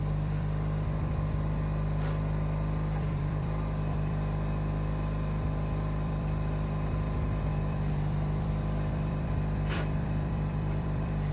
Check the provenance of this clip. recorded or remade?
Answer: remade